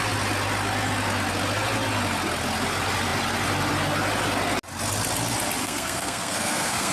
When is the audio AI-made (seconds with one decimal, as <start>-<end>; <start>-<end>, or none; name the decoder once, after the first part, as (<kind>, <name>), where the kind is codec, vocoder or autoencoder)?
5.6-6.9 (codec, SNAC)